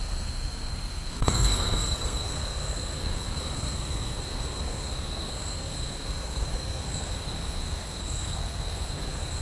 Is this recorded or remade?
remade